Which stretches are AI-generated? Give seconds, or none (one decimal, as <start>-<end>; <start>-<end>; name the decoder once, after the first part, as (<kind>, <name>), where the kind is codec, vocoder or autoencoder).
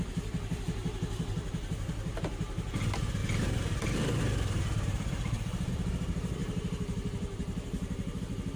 3.2-5.7 (vocoder, BigVGAN v2); 6.4-8.2